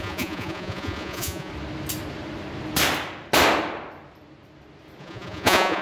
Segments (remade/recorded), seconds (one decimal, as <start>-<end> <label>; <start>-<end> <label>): 0.0-1.5 remade; 1.5-5.0 recorded; 5.0-5.8 remade